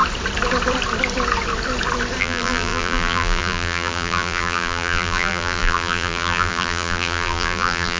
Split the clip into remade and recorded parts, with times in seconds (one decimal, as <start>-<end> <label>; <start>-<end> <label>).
0.0-2.2 recorded; 2.2-8.0 remade